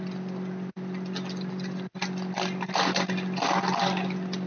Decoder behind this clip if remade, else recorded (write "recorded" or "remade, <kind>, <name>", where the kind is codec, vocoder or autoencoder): recorded